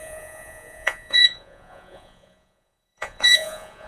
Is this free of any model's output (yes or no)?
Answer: no